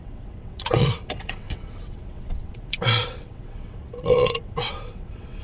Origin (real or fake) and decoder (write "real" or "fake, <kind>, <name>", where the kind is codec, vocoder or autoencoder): fake, vocoder, WaveNeXt